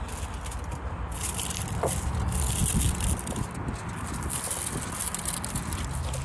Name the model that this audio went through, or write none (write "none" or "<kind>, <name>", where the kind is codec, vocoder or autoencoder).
none